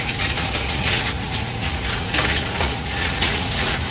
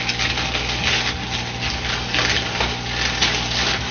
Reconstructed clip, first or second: first